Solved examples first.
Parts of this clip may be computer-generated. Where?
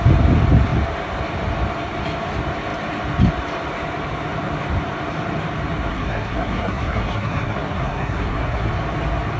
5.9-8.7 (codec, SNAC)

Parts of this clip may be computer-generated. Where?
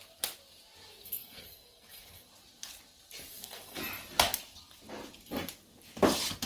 0.9-2.3 (codec, SNAC); 3.3-3.8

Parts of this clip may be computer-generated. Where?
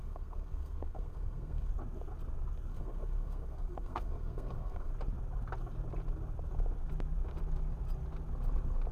0.0-1.7 (codec, SNAC); 2.7-4.9